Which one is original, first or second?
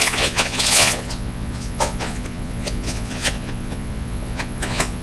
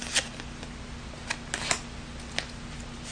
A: second